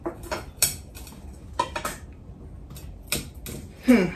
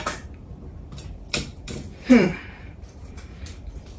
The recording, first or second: first